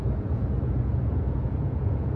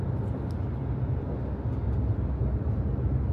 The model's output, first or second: first